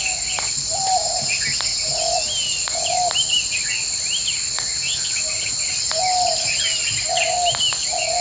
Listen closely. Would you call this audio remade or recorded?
recorded